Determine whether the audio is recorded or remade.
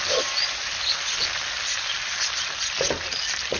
recorded